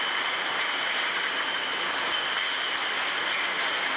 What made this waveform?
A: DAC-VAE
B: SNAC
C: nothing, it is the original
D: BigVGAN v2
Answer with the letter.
C